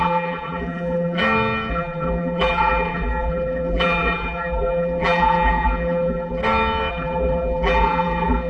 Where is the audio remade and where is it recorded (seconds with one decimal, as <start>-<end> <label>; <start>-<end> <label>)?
0.0-1.2 remade; 1.2-1.7 recorded; 1.7-6.4 remade; 6.4-6.9 recorded; 6.9-8.5 remade